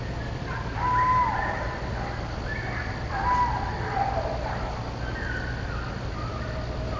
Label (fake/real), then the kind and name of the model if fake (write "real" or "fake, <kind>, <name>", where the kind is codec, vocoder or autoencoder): real